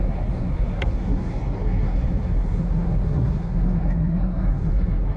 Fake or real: fake